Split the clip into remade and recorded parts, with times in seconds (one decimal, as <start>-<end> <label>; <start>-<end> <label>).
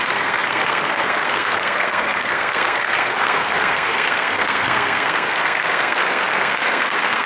0.0-7.3 remade